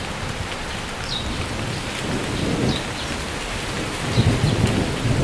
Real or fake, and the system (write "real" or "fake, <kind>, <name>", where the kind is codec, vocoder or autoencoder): real